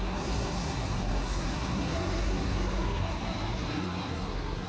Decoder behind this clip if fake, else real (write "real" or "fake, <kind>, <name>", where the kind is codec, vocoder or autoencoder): fake, codec, SNAC